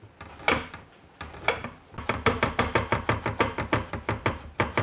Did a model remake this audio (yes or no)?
no